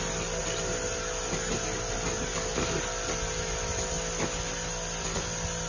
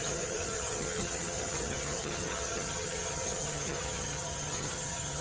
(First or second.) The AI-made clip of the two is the second